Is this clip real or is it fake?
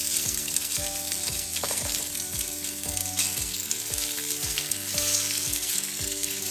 fake